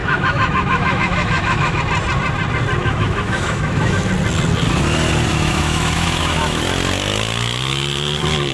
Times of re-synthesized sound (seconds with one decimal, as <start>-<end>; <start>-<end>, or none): 0.0-1.8; 2.8-4.1; 5.3-6.6